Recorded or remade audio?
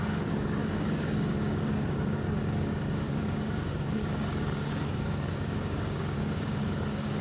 remade